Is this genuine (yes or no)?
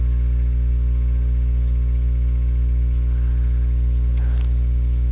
yes